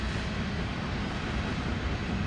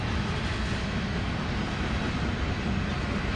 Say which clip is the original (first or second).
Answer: second